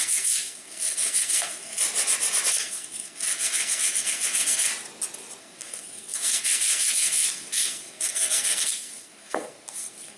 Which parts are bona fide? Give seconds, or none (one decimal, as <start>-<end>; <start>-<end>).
1.8-2.5; 4.7-5.4